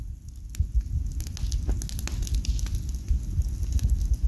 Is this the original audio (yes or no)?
yes